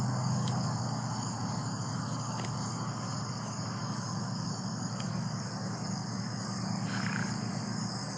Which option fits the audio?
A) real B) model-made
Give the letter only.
B